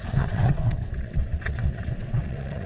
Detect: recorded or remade remade